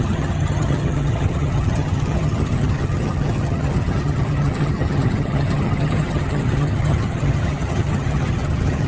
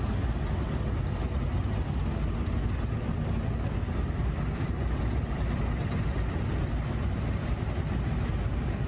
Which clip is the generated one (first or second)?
first